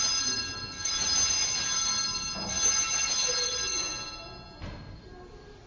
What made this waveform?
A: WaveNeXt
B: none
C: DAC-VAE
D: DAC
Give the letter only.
B